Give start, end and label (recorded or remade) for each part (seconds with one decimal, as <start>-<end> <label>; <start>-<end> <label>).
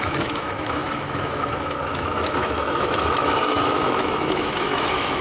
0.0-5.2 remade